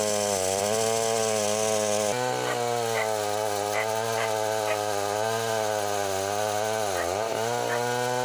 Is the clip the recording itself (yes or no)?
yes